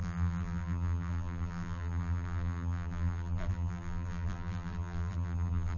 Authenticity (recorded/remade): remade